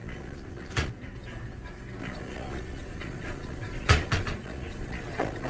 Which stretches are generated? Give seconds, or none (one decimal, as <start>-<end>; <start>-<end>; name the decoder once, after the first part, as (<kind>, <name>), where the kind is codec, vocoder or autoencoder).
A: 0.0-0.9 (vocoder, Vocos); 2.0-5.5